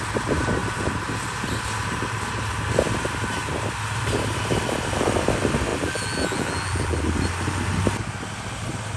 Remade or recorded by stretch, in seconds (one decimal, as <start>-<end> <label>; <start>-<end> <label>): 0.0-5.7 recorded; 5.7-7.0 remade; 7.0-9.0 recorded